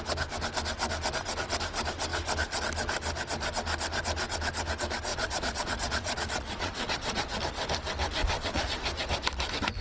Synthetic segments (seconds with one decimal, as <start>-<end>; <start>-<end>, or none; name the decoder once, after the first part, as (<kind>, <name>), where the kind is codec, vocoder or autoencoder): 5.1-7.4 (vocoder, Vocos); 8.2-9.0